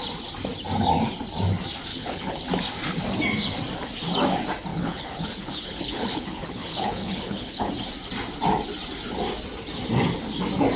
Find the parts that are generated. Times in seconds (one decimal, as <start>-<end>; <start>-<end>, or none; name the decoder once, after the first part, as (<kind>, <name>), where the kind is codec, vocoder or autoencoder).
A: 1.9-2.4 (codec, HILCodec); 4.7-7.7